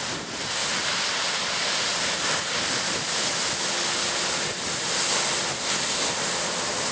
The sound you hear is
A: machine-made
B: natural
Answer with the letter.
B